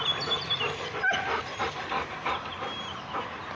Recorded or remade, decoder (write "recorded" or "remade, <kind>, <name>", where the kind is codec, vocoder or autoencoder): recorded